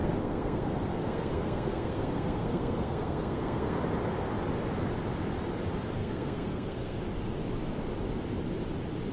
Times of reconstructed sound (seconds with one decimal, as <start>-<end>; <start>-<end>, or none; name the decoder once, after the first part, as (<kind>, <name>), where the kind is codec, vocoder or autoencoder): 0.0-3.8 (codec, SNAC); 6.0-7.0